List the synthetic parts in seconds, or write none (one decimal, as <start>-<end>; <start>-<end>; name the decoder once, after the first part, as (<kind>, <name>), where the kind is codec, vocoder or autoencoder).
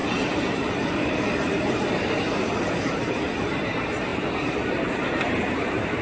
0.0-6.0 (vocoder, BigVGAN v2)